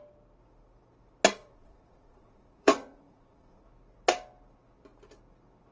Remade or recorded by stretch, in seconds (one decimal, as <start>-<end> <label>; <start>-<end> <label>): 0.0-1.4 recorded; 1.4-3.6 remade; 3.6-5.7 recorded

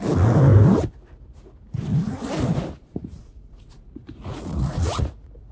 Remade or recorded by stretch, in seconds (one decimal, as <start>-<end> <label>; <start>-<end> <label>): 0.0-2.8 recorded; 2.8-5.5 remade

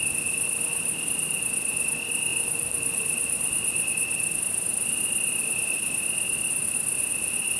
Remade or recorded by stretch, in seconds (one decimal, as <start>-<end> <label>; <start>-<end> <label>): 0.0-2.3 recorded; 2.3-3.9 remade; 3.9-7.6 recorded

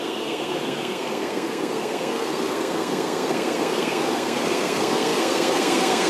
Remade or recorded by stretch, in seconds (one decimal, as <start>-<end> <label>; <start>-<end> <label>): 0.0-6.1 remade

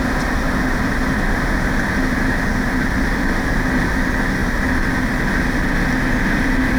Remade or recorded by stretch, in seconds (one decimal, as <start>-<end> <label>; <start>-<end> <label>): 0.0-1.3 recorded; 1.3-1.8 remade; 1.8-6.8 recorded

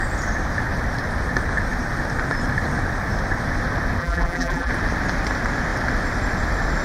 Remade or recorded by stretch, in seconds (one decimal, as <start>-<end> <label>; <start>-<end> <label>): 0.0-4.0 recorded; 4.0-4.7 remade; 4.7-6.8 recorded

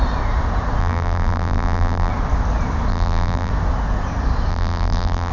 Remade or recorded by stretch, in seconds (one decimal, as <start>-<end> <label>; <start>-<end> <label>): 0.0-0.8 recorded; 0.8-2.1 remade; 2.1-2.9 recorded; 2.9-3.5 remade; 3.5-4.5 recorded; 4.5-5.3 remade

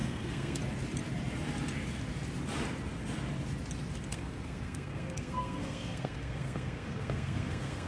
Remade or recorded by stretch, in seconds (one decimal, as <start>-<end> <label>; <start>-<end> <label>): 0.0-0.6 remade; 0.6-4.1 recorded; 4.1-7.9 remade